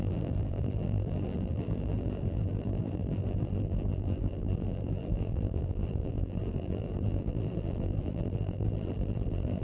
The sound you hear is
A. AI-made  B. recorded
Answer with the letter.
A